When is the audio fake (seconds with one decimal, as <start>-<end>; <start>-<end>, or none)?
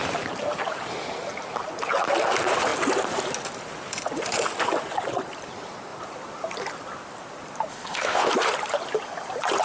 7.7-8.3